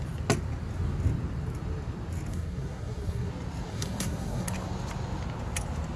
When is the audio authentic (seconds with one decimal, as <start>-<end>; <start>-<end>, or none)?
0.0-2.3; 3.3-3.7; 4.5-6.0